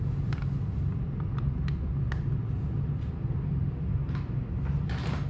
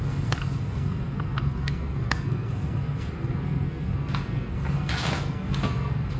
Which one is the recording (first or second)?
first